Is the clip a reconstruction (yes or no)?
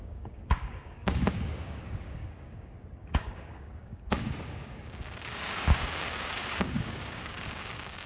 yes